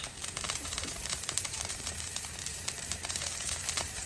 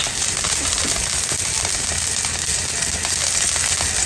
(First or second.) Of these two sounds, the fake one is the first